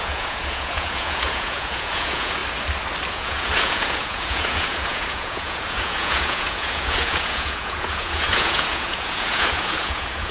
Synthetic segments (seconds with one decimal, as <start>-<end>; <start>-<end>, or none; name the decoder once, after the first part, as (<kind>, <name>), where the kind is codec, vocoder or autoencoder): 0.0-2.4 (vocoder, Vocos); 3.1-10.3